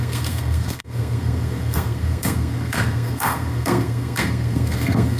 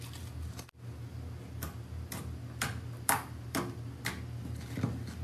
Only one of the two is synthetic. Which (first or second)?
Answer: first